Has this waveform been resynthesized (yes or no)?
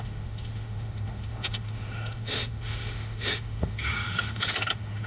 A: yes